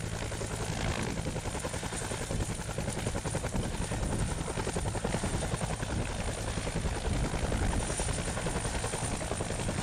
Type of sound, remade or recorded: recorded